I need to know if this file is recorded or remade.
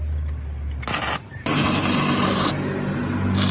recorded